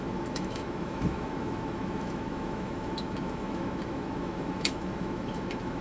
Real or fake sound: fake